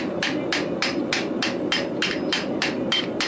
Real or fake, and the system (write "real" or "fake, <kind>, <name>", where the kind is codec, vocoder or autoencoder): fake, vocoder, BigVGAN v2